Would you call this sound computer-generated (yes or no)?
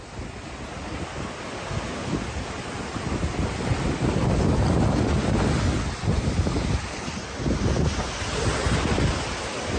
no